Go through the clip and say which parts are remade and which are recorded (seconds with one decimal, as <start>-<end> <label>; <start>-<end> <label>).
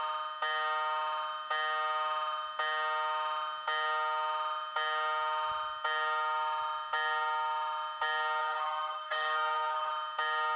0.0-8.4 recorded; 8.4-9.9 remade; 9.9-10.6 recorded